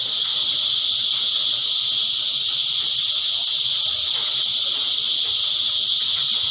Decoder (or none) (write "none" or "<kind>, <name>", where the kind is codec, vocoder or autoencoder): none